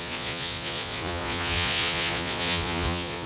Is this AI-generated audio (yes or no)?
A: yes